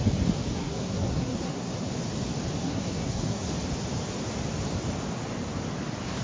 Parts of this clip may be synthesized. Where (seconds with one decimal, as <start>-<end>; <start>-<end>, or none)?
0.6-1.7; 2.6-3.5